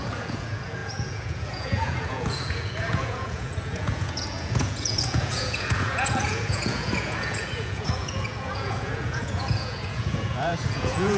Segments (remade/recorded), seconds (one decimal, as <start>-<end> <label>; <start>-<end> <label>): 0.0-11.2 remade